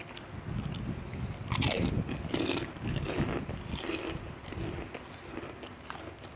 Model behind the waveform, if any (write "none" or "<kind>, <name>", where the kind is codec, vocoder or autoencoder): none